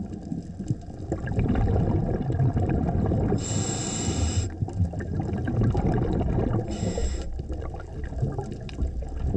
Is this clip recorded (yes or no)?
yes